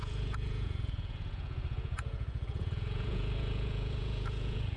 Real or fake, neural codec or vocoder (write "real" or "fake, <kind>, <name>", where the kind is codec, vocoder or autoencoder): fake, vocoder, Vocos